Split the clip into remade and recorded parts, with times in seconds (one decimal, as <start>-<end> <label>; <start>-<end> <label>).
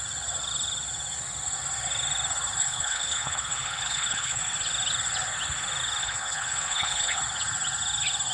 0.0-2.6 recorded; 2.6-4.4 remade; 4.4-6.0 recorded; 6.0-7.2 remade; 7.2-8.3 recorded